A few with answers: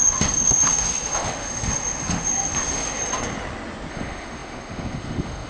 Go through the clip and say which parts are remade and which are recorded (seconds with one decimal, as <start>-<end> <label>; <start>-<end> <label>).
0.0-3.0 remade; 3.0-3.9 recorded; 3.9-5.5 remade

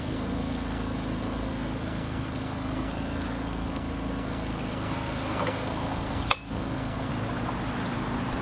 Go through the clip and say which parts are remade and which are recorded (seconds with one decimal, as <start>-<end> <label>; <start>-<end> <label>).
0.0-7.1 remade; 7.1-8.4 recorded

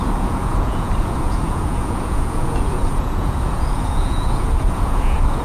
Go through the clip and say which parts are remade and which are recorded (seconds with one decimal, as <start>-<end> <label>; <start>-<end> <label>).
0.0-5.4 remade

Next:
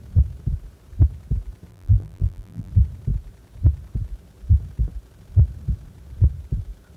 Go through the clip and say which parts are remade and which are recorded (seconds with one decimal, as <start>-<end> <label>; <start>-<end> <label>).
0.0-1.7 recorded; 1.7-2.7 remade; 2.7-7.0 recorded

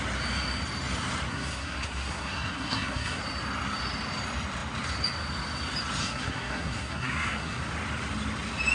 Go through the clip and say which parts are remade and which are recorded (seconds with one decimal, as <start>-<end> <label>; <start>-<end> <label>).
0.0-1.3 recorded; 1.3-3.2 remade; 3.2-6.0 recorded; 6.0-7.6 remade; 7.6-8.7 recorded

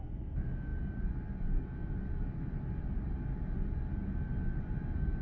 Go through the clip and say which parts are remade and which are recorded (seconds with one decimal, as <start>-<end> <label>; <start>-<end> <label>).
0.0-5.2 recorded

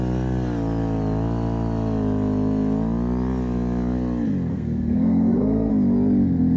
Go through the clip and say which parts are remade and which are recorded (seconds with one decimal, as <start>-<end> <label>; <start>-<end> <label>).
0.0-4.5 recorded; 4.5-5.7 remade; 5.7-6.6 recorded

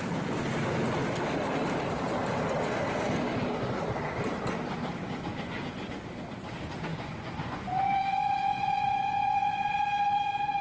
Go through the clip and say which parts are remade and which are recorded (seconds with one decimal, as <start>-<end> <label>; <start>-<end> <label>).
0.0-5.3 recorded; 5.3-5.9 remade; 5.9-6.9 recorded; 6.9-9.7 remade; 9.7-10.6 recorded